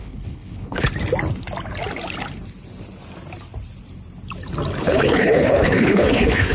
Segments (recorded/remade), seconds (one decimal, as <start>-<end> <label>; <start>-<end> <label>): 0.0-0.9 remade; 0.9-4.8 recorded; 4.8-6.5 remade